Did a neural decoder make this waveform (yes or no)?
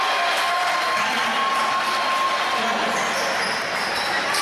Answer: no